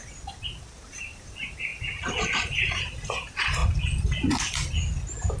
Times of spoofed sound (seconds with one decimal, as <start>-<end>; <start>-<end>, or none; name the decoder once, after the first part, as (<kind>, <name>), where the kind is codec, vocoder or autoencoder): 0.0-3.6 (vocoder, BigVGAN v2)